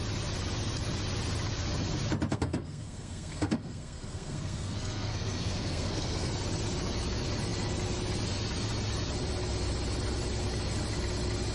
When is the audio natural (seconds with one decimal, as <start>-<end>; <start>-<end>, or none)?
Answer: 0.0-2.3; 6.3-11.5